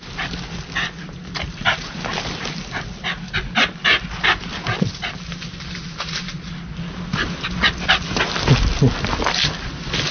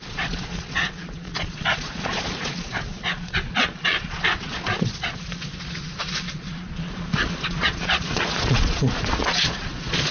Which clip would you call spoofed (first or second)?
second